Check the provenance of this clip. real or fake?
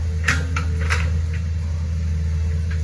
real